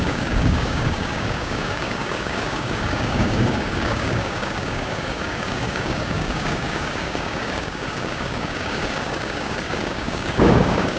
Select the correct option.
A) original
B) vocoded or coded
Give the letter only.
B